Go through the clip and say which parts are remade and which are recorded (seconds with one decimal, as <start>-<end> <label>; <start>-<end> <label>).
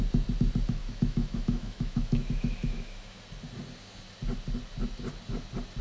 0.0-0.8 recorded; 0.8-3.2 remade; 3.2-5.8 recorded